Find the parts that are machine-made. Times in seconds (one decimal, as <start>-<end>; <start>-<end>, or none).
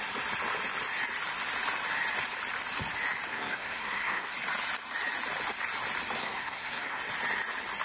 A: 3.3-4.3; 6.2-7.0